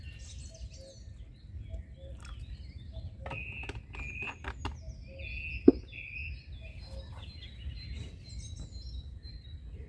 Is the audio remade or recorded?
recorded